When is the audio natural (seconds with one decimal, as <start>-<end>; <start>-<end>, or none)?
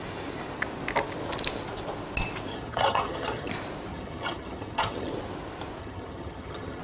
0.0-2.5; 3.5-3.9; 5.1-5.8